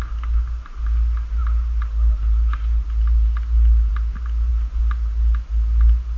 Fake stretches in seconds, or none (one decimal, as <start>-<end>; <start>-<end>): none